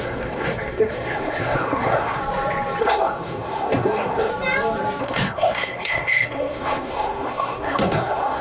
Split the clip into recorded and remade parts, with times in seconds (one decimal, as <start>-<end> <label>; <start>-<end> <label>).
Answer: 0.0-2.2 remade; 2.2-2.8 recorded; 2.8-4.3 remade; 4.3-5.0 recorded; 5.0-8.4 remade

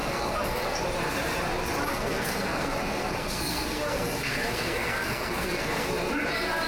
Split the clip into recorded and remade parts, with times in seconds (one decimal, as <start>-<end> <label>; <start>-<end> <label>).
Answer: 0.0-0.8 remade; 0.8-1.9 recorded; 1.9-5.9 remade; 5.9-6.7 recorded

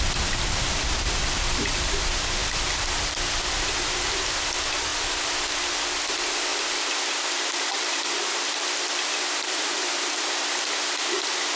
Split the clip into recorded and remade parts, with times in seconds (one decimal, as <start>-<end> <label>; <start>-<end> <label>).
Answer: 0.0-2.4 recorded; 2.4-2.9 remade; 2.9-6.5 recorded; 6.5-10.6 remade; 10.6-11.6 recorded

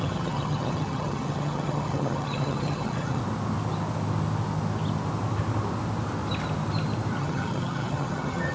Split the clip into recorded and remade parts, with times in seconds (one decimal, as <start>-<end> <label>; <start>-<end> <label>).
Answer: 0.0-3.2 remade; 3.2-7.2 recorded; 7.2-8.5 remade

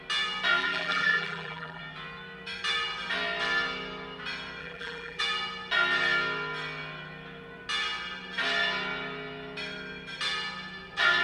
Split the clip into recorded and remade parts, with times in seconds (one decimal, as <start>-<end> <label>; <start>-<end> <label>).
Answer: 0.0-0.6 recorded; 0.6-1.8 remade; 1.8-4.6 recorded; 4.6-5.2 remade; 5.2-11.2 recorded

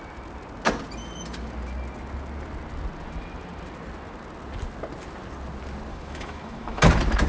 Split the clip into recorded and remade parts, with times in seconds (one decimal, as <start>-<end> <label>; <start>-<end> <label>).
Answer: 0.0-5.9 recorded; 5.9-6.8 remade; 6.8-7.3 recorded